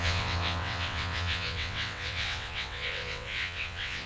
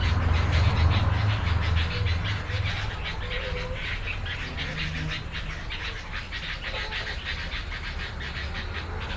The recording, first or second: second